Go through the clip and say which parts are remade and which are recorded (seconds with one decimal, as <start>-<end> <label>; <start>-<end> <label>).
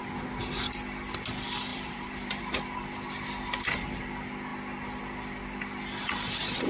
0.0-1.7 recorded; 1.7-2.6 remade; 2.6-6.7 recorded